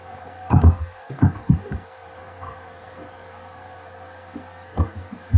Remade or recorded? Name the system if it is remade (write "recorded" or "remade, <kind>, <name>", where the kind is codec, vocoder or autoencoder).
remade, codec, SNAC